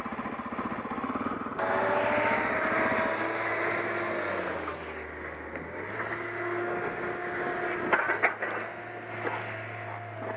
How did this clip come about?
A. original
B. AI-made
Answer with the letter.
A